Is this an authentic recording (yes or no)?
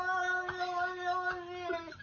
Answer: yes